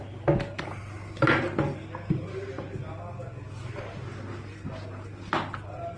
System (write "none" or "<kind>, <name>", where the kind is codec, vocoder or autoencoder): none